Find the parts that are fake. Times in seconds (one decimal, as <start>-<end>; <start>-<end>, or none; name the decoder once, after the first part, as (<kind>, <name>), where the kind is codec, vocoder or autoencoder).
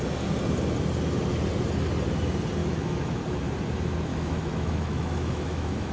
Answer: 2.6-3.2 (autoencoder, DAC-VAE); 4.1-5.9